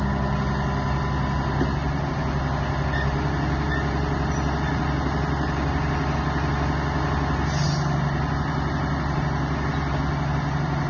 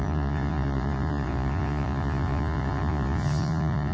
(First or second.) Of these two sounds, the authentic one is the first